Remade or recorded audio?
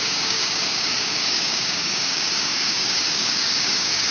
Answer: remade